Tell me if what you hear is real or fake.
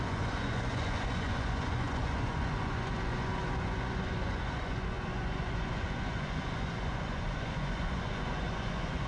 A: fake